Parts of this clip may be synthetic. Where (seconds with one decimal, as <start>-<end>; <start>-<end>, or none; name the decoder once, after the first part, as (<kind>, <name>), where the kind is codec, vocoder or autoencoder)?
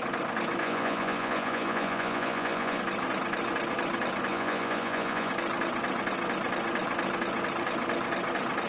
0.6-2.8 (vocoder, Vocos); 4.3-5.3